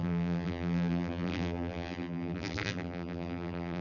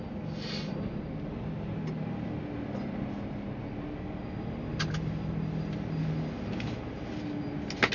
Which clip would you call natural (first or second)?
second